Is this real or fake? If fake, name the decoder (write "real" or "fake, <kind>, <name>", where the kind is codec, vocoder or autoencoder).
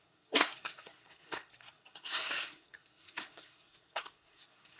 fake, codec, SNAC